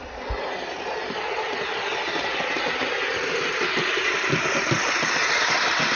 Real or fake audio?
real